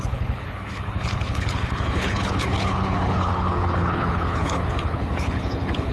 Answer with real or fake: fake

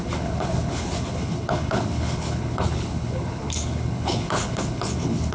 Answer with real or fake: fake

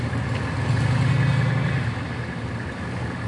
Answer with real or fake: real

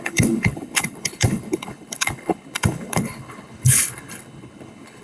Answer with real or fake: fake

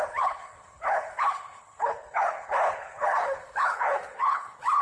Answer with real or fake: fake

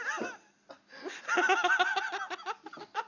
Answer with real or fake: real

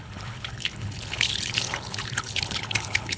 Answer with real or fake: fake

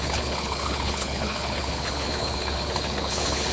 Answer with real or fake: fake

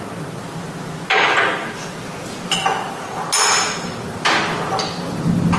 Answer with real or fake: real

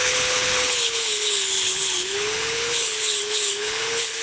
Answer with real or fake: fake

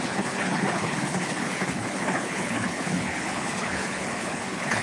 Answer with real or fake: fake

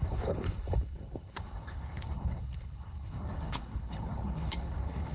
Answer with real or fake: fake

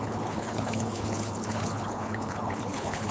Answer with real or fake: fake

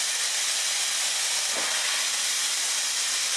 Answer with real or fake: real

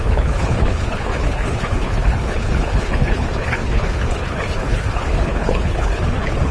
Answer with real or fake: fake